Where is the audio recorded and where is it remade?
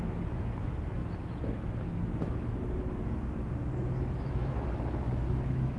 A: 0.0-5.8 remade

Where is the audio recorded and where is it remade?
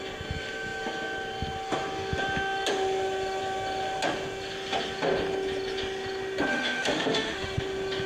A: 0.0-6.5 recorded; 6.5-7.6 remade; 7.6-8.1 recorded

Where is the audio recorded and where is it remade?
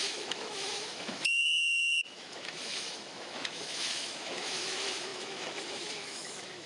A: 0.0-6.7 remade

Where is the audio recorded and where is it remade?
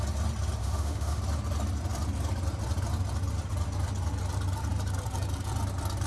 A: 0.0-0.6 recorded; 0.6-1.2 remade; 1.2-6.1 recorded